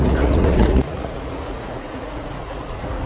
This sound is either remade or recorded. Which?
remade